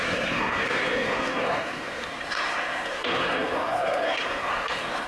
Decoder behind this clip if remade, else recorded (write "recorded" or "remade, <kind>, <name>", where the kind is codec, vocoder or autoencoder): remade, codec, SNAC